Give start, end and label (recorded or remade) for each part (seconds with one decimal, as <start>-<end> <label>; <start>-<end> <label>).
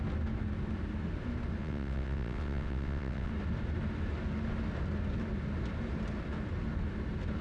0.0-1.6 recorded; 1.6-3.3 remade; 3.3-7.4 recorded